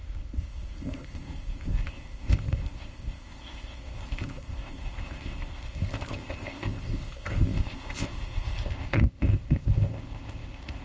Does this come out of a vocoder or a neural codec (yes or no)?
yes